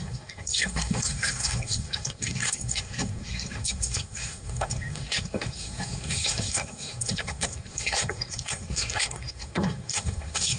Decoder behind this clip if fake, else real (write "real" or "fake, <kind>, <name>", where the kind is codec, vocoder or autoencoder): fake, codec, SNAC